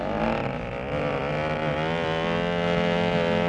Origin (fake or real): real